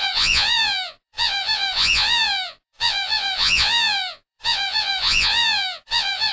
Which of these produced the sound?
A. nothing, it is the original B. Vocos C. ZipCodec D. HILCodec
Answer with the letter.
B